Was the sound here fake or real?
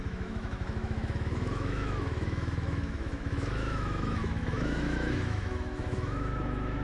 fake